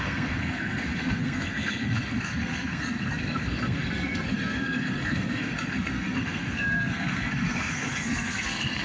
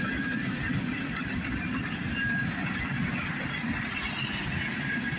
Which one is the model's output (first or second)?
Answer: first